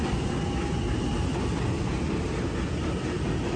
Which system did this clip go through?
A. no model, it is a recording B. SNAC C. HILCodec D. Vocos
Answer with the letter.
A